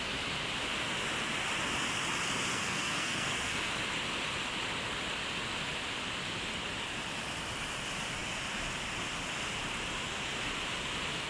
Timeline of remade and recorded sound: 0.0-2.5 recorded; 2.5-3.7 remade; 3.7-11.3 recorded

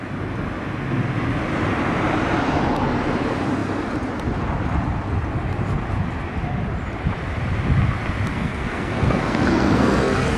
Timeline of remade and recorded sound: 0.0-8.3 recorded; 8.3-10.4 remade

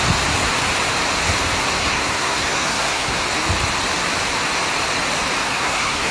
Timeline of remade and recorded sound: 0.0-1.8 recorded; 1.8-3.2 remade; 3.2-5.4 recorded; 5.4-6.1 remade

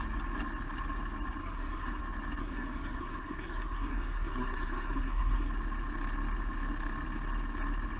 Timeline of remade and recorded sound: 0.0-1.4 recorded; 1.4-2.0 remade; 2.0-2.4 recorded; 2.4-5.5 remade; 5.5-8.0 recorded

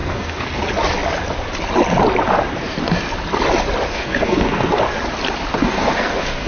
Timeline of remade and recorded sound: 0.0-0.6 remade; 0.6-3.9 recorded; 3.9-4.8 remade; 4.8-5.6 recorded; 5.6-6.5 remade

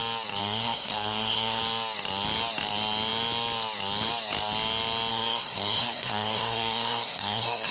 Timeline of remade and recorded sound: 0.0-0.4 recorded; 0.4-1.6 remade; 1.6-5.1 recorded; 5.1-7.7 remade

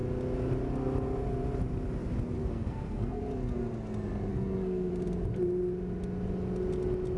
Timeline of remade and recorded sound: 0.0-2.4 recorded; 2.4-3.2 remade; 3.2-4.3 recorded; 4.3-4.9 remade; 4.9-7.2 recorded

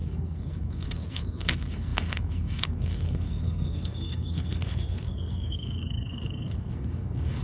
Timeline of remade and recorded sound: 0.0-7.4 remade